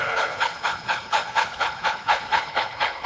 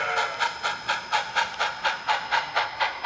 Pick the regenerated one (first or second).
first